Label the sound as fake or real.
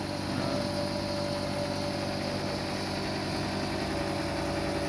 real